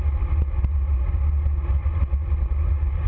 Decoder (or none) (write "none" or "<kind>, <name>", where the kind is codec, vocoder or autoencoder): none